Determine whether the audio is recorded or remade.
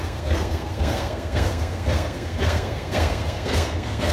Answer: remade